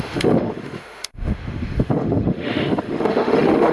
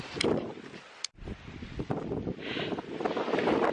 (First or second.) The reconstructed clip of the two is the first